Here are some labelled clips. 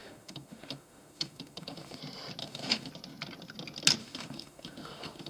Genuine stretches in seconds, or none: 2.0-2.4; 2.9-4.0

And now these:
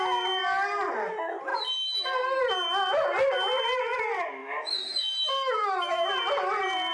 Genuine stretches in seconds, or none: 0.0-4.4; 6.1-6.9

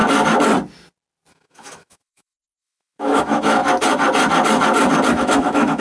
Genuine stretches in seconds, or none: 0.0-1.3; 3.6-5.1

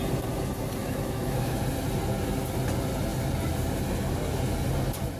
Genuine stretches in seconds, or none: 0.0-0.8; 1.6-5.2

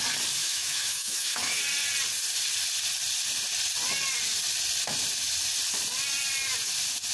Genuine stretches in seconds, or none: 0.0-0.4; 1.6-7.1